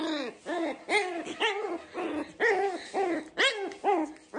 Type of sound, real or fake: real